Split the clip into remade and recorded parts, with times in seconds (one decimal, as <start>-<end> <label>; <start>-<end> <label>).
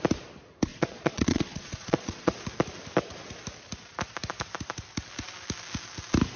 0.0-0.7 recorded; 0.7-2.3 remade; 2.3-6.4 recorded